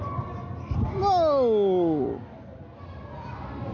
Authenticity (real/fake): real